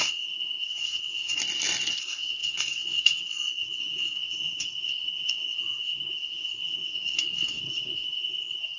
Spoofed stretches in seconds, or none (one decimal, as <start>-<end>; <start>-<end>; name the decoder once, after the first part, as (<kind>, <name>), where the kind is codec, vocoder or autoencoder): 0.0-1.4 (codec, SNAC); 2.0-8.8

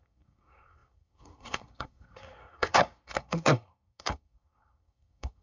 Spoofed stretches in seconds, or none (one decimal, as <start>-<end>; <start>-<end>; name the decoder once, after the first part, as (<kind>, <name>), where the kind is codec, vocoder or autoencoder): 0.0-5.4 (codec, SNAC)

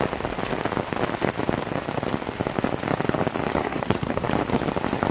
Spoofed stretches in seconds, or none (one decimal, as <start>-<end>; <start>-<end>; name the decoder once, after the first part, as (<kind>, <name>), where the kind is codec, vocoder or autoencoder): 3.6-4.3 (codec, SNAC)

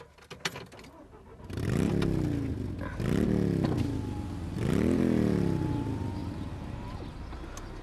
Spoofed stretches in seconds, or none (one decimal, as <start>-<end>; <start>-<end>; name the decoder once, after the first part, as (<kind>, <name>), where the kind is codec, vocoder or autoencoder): none

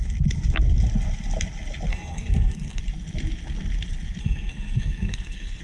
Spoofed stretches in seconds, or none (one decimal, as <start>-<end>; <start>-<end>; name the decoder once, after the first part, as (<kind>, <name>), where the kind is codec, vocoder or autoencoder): 1.9-2.8 (codec, SNAC); 4.2-5.6

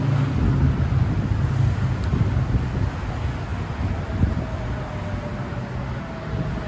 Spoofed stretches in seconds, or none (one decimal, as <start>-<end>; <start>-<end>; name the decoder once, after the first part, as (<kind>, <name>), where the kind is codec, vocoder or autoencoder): none

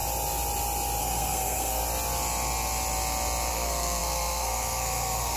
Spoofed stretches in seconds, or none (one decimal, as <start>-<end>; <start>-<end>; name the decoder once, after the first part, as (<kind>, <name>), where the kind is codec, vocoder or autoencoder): 1.0-1.8 (codec, SNAC); 3.5-5.4